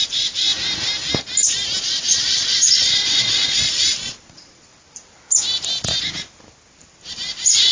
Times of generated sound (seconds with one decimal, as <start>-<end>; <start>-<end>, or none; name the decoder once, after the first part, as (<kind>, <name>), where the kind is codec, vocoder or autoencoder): 0.0-0.5 (vocoder, Vocos); 1.8-4.7; 7.1-7.7